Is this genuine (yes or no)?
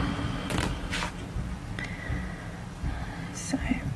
yes